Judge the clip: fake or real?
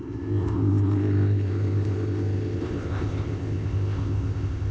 fake